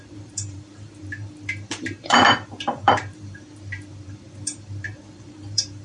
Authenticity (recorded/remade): remade